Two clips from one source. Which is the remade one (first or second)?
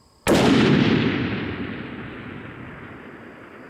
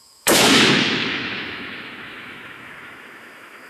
second